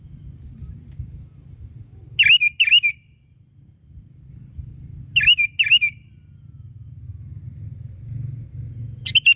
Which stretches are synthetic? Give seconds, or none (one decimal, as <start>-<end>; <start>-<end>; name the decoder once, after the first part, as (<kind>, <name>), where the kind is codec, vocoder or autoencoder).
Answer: none